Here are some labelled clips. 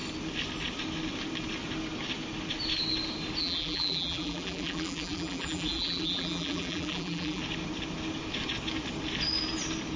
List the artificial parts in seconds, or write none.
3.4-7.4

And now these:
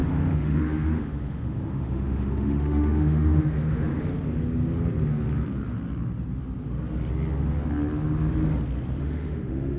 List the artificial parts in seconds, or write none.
0.0-3.9; 9.0-9.8